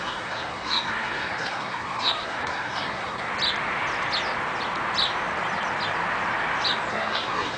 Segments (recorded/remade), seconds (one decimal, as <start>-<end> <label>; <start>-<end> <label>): 0.0-3.3 remade; 3.3-6.9 recorded; 6.9-7.6 remade